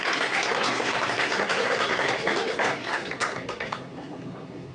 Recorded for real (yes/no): no